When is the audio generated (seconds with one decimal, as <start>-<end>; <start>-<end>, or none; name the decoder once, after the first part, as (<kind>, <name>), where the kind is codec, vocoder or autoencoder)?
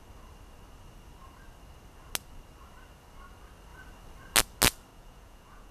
4.9-5.7 (vocoder, Vocos)